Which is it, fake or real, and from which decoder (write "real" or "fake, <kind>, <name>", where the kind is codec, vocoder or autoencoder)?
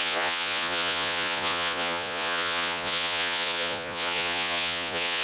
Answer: fake, vocoder, Vocos